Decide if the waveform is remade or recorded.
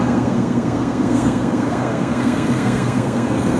remade